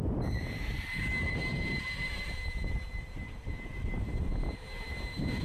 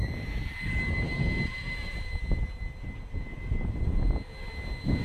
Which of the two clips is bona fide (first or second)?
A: second